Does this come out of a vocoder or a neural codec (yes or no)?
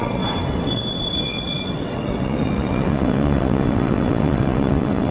yes